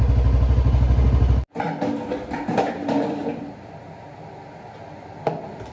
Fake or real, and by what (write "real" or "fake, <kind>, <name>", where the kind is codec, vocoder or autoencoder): real